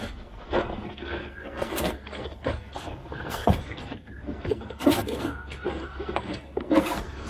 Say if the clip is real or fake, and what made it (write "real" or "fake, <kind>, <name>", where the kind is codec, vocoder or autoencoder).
fake, codec, SNAC